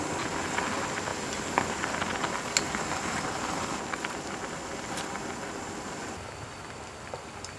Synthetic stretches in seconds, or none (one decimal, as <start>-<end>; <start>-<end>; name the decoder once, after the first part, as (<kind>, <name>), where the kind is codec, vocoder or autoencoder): none